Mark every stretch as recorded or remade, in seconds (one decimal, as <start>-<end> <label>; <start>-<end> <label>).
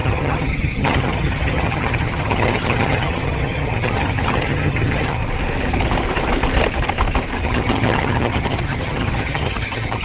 0.0-5.2 remade; 5.2-7.4 recorded; 7.4-10.0 remade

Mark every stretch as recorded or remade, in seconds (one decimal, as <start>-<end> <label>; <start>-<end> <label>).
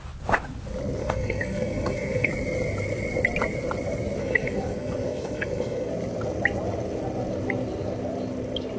0.0-1.0 recorded; 1.0-2.3 remade; 2.3-4.2 recorded; 4.2-5.9 remade; 5.9-8.8 recorded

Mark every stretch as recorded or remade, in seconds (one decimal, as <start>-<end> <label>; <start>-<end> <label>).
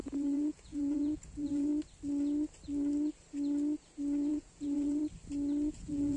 0.0-1.7 remade; 1.7-4.3 recorded; 4.3-5.0 remade; 5.0-5.7 recorded; 5.7-6.2 remade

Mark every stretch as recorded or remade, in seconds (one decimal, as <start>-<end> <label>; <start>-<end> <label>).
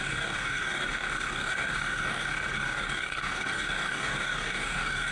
0.0-5.1 remade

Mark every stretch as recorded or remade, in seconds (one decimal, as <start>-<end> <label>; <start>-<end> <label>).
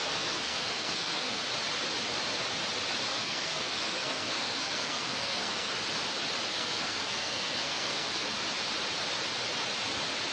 0.0-1.4 remade; 1.4-3.1 recorded; 3.1-5.7 remade; 5.7-6.5 recorded; 6.5-8.3 remade; 8.3-10.3 recorded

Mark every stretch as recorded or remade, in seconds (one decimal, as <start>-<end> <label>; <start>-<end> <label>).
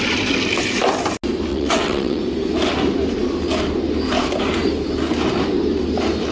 0.0-1.5 recorded; 1.5-2.2 remade; 2.2-6.3 recorded